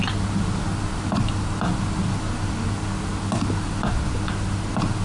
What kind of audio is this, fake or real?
real